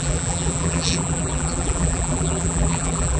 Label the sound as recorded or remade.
remade